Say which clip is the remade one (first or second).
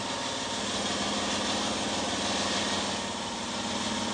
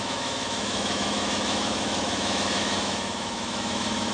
second